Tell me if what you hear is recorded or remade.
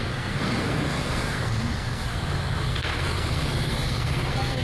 remade